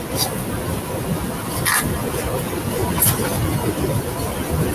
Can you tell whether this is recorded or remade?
recorded